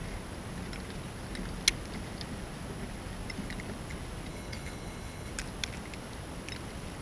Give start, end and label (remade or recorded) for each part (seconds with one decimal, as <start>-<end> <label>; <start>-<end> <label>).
0.0-4.3 recorded; 4.3-5.3 remade; 5.3-7.0 recorded